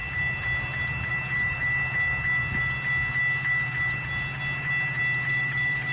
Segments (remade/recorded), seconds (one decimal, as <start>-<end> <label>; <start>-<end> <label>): 0.0-1.1 recorded; 1.1-1.8 remade; 1.8-5.3 recorded; 5.3-5.9 remade